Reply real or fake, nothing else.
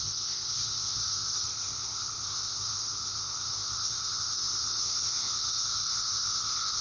fake